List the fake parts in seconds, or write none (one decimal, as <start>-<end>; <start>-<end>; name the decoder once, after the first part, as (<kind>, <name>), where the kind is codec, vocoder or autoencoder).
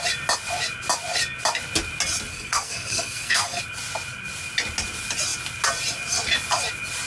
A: 2.3-3.6 (codec, SNAC)